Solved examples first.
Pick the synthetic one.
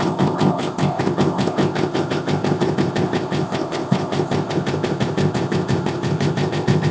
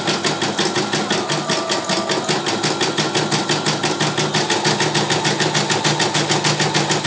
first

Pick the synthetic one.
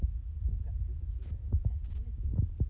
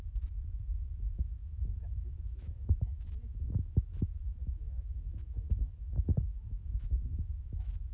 second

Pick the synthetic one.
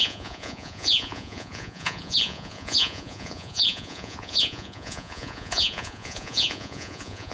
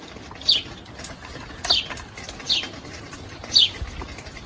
first